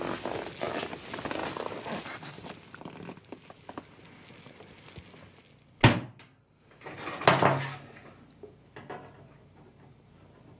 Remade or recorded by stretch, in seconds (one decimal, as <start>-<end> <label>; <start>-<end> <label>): 0.0-1.4 recorded; 1.4-3.0 remade; 3.0-10.6 recorded